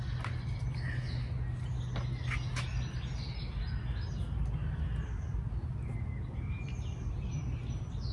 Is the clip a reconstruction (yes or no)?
no